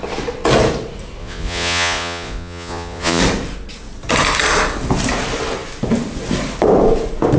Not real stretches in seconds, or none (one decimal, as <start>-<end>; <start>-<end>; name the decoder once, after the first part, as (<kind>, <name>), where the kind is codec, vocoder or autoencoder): 1.2-3.2 (vocoder, Vocos)